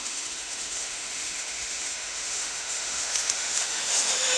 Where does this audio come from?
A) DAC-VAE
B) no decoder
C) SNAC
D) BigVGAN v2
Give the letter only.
A